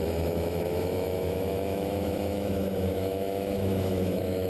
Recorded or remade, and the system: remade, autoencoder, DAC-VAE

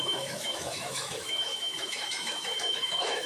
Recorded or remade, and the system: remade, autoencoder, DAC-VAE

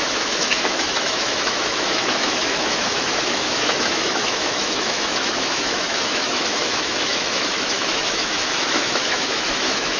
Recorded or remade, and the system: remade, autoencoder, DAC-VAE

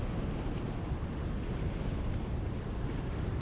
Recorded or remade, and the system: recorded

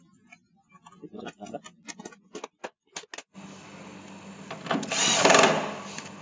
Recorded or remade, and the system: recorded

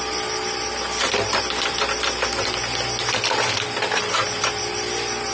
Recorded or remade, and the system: recorded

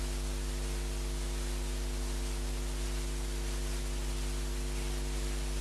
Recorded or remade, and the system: recorded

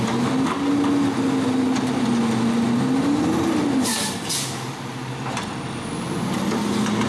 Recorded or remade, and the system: recorded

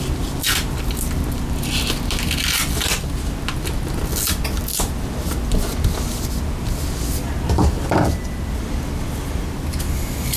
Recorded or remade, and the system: recorded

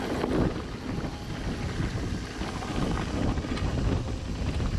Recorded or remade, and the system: recorded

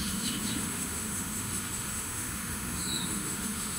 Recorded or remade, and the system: remade, autoencoder, DAC-VAE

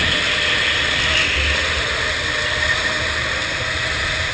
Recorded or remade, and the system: recorded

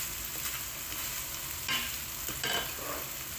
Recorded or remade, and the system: recorded